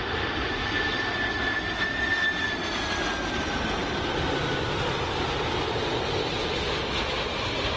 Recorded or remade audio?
recorded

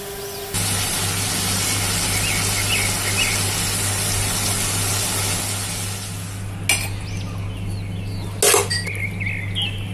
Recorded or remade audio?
recorded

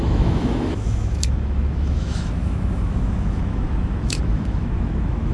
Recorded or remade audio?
remade